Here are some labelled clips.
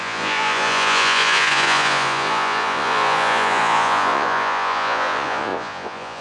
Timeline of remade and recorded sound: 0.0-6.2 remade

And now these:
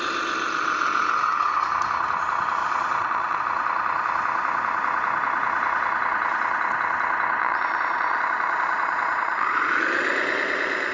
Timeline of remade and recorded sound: 0.0-2.6 recorded; 2.6-3.4 remade; 3.4-7.4 recorded; 7.4-9.8 remade; 9.8-10.9 recorded

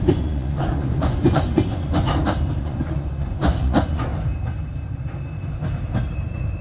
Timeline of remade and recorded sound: 0.0-2.1 remade; 2.1-2.6 recorded; 2.6-4.1 remade; 4.1-6.6 recorded

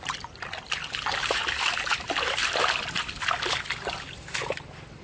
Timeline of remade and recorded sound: 0.0-5.0 recorded

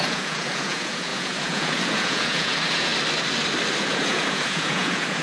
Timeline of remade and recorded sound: 0.0-2.9 remade; 2.9-3.8 recorded; 3.8-5.2 remade

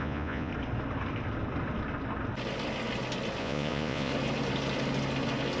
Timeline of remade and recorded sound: 0.0-0.5 remade; 0.5-3.4 recorded; 3.4-4.1 remade; 4.1-5.6 recorded

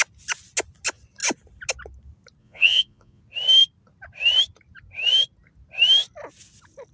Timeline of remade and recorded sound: 0.0-2.4 recorded; 2.4-3.2 remade; 3.2-6.9 recorded

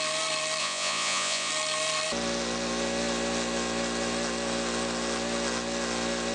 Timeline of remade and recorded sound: 0.0-0.6 recorded; 0.6-1.5 remade; 1.5-6.3 recorded